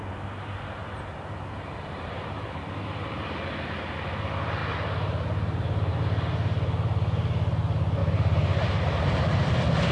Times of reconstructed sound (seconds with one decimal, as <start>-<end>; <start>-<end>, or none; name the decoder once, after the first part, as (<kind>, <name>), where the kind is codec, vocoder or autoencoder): 0.8-2.7 (vocoder, BigVGAN v2); 4.6-5.9; 8.0-9.5